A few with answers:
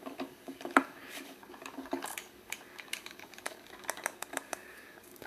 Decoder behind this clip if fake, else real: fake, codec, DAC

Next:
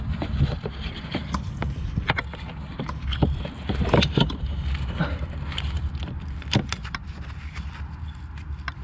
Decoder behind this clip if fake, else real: real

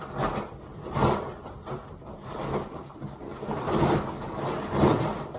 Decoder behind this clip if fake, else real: real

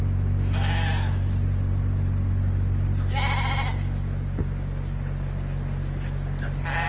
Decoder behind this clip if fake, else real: real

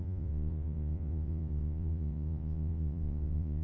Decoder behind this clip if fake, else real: fake, vocoder, Vocos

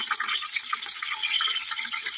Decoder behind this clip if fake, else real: fake, vocoder, Vocos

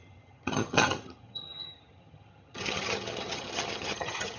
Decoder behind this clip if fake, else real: fake, vocoder, HiFi-GAN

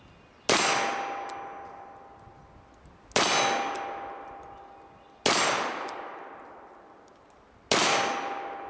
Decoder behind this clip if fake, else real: real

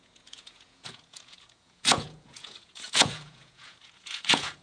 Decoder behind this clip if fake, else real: fake, vocoder, Vocos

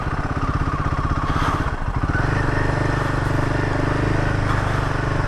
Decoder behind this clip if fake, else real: real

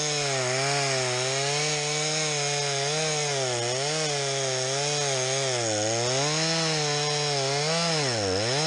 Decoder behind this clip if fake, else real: real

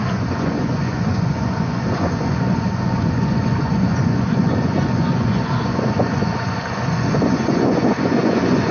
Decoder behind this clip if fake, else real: fake, vocoder, Vocos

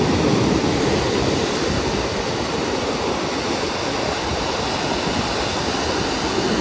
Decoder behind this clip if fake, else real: real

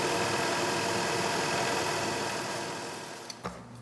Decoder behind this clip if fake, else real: real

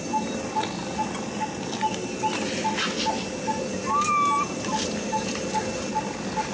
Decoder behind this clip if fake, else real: real